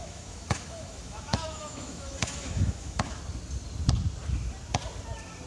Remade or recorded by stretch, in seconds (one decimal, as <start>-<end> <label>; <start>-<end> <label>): 0.0-3.2 remade; 3.2-5.5 recorded